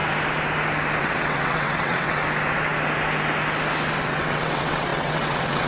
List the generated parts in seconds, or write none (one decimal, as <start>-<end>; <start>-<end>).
1.0-2.2; 4.0-5.7